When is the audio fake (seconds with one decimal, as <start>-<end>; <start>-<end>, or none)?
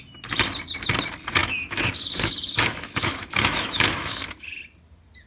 1.4-4.6